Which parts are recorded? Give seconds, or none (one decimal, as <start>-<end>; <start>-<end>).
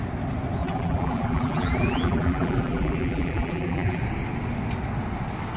0.0-0.6; 4.0-5.6